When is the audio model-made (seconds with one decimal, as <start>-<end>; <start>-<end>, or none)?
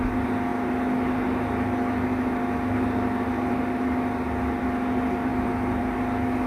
none